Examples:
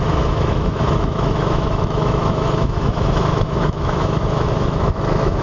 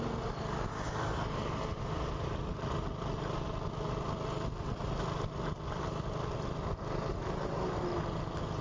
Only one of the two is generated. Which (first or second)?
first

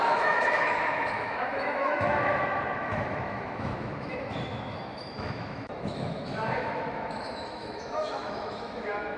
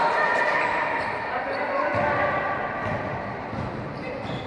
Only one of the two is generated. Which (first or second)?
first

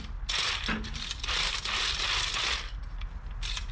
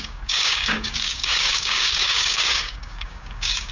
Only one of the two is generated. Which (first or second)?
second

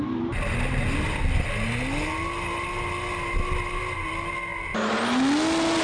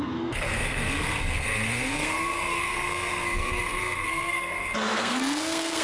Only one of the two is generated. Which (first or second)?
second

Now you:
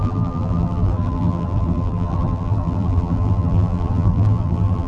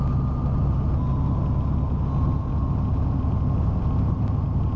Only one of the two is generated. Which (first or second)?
first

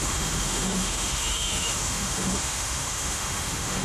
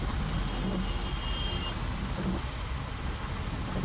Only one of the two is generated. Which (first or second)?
first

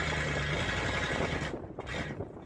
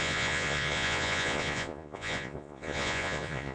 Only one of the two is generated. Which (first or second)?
second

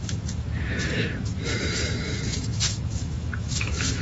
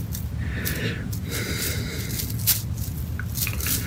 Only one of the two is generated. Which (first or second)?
first